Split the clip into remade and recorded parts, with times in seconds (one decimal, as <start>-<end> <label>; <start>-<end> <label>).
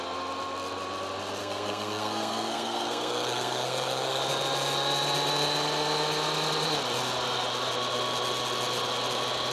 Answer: 0.0-1.4 recorded; 1.4-4.2 remade; 4.2-9.5 recorded